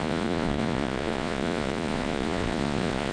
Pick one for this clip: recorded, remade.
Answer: remade